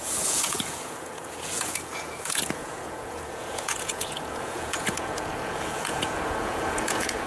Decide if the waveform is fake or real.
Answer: fake